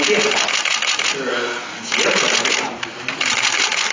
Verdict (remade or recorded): recorded